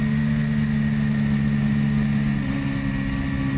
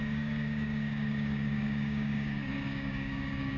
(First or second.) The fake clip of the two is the second